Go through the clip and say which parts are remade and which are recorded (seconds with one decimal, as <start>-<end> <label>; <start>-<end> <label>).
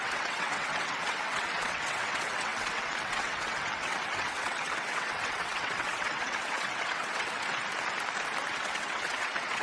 0.0-7.6 remade; 7.6-8.5 recorded; 8.5-9.6 remade